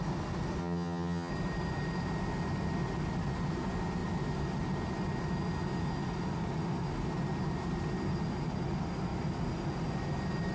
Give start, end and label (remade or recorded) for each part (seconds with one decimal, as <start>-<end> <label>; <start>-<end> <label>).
0.0-0.6 recorded; 0.6-1.3 remade; 1.3-10.5 recorded